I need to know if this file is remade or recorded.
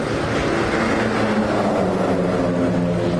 recorded